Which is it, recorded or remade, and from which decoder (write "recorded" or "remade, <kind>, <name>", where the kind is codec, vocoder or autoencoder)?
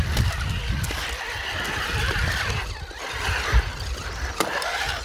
recorded